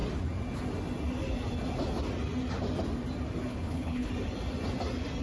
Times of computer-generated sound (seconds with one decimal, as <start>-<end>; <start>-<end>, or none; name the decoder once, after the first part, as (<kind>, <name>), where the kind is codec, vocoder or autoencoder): 3.5-4.1 (codec, HILCodec)